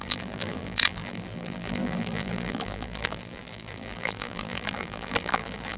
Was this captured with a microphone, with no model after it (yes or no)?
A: no